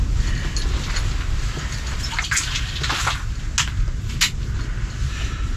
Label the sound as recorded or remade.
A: recorded